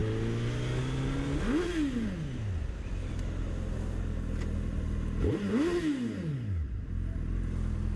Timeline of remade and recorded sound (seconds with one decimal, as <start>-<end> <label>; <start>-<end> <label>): 0.0-8.0 recorded